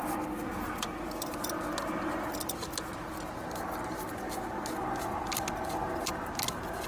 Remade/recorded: recorded